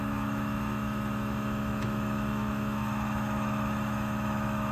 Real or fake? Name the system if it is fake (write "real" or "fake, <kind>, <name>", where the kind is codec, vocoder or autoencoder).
fake, autoencoder, DAC-VAE